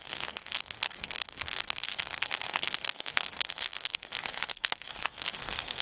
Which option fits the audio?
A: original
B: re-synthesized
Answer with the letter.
B